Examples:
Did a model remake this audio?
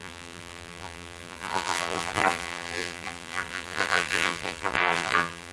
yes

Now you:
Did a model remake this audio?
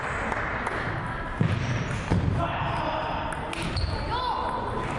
no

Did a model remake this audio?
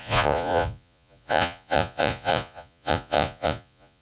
yes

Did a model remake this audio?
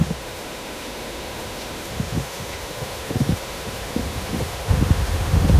yes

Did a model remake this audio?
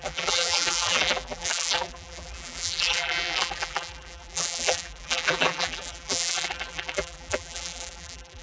yes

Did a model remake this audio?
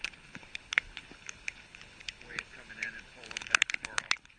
yes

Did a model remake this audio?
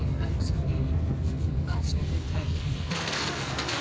yes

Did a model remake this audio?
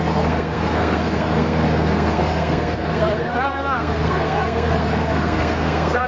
yes